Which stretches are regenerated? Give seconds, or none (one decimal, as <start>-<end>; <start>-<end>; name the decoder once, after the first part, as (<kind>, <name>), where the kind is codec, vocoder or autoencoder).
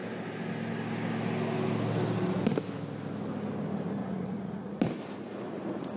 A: 4.0-4.8 (vocoder, Vocos); 5.3-6.0